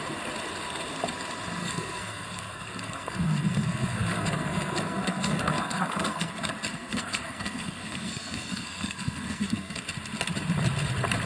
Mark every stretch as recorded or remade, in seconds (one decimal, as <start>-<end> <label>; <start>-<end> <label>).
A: 0.0-1.6 recorded; 1.6-6.3 remade; 6.3-6.7 recorded; 6.7-9.8 remade; 9.8-11.3 recorded